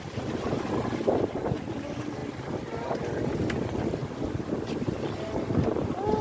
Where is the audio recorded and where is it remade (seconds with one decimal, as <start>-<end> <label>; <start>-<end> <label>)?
0.0-2.2 recorded; 2.2-3.3 remade; 3.3-6.2 recorded